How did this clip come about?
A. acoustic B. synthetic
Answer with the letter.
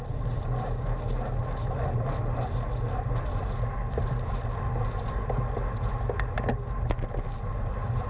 A